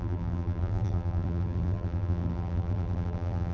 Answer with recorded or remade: remade